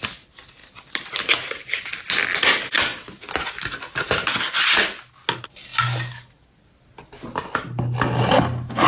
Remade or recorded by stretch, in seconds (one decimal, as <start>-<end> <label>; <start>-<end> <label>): 0.0-8.9 recorded